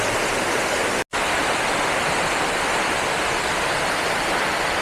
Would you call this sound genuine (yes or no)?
yes